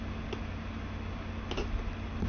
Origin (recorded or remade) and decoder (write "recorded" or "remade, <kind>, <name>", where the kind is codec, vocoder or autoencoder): recorded